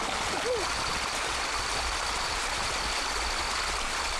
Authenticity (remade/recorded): recorded